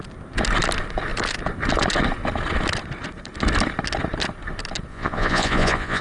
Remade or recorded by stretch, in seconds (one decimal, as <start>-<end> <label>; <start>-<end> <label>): 0.0-4.9 recorded; 4.9-6.0 remade